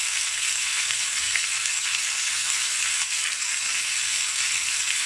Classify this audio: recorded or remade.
remade